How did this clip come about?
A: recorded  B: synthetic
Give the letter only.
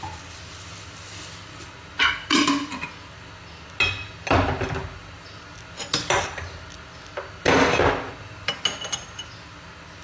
A